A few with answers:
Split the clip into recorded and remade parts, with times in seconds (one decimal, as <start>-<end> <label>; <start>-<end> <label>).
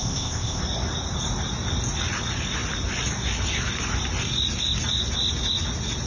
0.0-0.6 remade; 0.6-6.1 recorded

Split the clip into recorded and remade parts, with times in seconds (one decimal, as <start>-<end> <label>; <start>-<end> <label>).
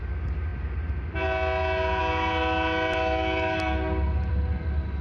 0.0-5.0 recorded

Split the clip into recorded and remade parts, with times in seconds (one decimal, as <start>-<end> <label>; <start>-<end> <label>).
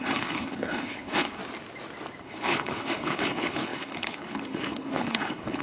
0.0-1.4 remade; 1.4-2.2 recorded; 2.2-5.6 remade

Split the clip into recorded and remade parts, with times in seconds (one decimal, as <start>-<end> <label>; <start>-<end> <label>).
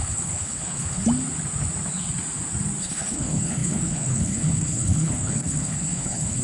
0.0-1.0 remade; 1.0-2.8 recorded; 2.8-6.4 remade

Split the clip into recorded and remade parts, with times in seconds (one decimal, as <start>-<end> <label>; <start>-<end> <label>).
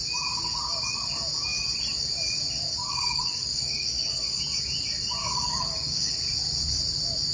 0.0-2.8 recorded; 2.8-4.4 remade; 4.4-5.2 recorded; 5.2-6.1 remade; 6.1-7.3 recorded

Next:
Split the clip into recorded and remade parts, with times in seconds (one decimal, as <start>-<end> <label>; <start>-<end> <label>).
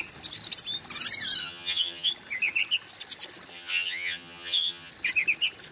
0.0-1.4 recorded; 1.4-2.1 remade; 2.1-3.5 recorded; 3.5-4.9 remade; 4.9-5.7 recorded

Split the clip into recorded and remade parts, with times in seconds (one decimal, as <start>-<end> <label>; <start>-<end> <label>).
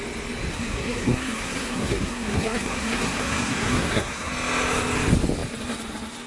0.0-0.5 recorded; 0.5-4.3 remade; 4.3-6.3 recorded